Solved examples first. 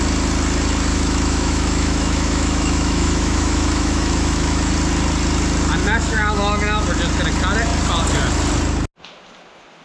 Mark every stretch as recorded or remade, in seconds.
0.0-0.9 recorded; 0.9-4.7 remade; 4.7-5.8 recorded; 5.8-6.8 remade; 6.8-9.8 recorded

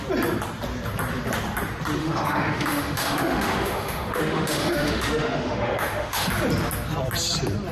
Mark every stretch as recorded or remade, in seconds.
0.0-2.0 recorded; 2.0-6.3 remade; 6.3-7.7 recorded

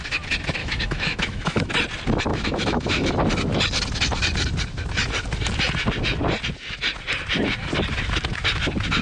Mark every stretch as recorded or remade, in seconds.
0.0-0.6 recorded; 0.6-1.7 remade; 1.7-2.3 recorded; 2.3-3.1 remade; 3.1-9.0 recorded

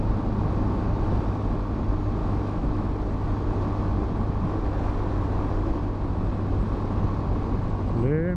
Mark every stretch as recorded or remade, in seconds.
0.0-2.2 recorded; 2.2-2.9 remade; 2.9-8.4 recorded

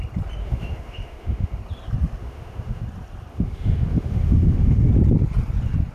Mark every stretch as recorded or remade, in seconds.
0.0-0.4 recorded; 0.4-1.6 remade; 1.6-2.2 recorded; 2.2-2.8 remade; 2.8-3.3 recorded; 3.3-4.9 remade; 4.9-5.9 recorded

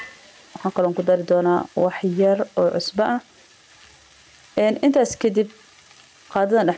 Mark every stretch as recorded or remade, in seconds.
0.0-6.8 recorded